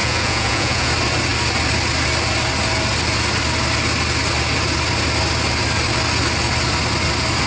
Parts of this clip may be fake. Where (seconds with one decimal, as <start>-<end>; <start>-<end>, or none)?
0.0-0.9